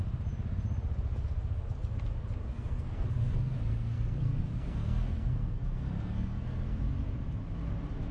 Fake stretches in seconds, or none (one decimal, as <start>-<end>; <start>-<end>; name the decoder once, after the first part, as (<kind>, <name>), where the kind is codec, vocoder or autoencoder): 2.4-6.8 (codec, SNAC)